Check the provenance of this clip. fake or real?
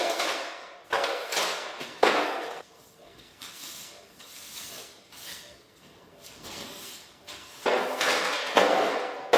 fake